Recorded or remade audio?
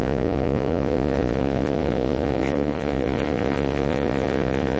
remade